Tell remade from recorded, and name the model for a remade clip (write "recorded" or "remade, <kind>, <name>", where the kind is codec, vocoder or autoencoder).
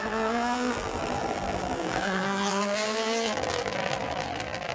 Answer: remade, vocoder, BigVGAN v2